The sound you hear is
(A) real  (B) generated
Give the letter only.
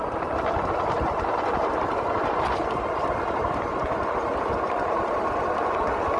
A